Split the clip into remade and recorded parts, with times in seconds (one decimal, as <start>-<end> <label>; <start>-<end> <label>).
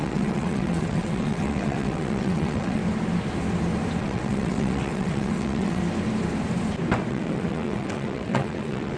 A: 0.0-2.8 remade; 2.8-4.0 recorded; 4.0-5.8 remade; 5.8-7.1 recorded; 7.1-9.0 remade